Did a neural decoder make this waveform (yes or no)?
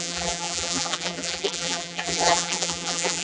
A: yes